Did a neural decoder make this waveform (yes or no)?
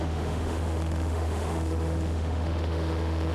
yes